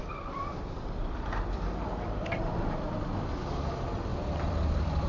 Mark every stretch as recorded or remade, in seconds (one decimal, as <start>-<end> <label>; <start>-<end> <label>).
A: 0.0-3.1 remade; 3.1-4.1 recorded; 4.1-5.1 remade